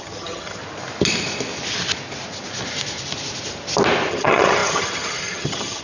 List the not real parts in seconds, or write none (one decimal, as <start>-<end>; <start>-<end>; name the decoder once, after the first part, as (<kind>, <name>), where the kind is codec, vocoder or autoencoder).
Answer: 0.0-0.6 (vocoder, HiFi-GAN); 4.1-5.8